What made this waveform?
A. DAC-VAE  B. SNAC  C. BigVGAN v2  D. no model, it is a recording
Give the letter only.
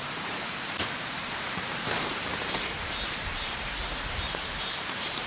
C